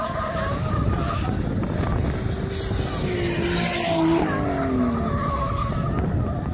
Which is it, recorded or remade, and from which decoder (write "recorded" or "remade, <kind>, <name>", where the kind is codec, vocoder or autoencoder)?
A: recorded